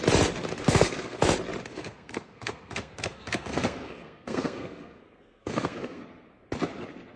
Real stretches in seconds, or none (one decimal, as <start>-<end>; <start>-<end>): 0.0-0.6; 1.2-1.7; 6.0-7.2